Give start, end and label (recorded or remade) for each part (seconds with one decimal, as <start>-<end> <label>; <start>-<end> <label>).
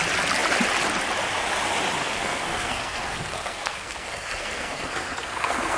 0.0-2.0 recorded; 2.0-5.8 remade